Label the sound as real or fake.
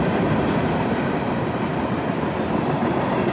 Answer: fake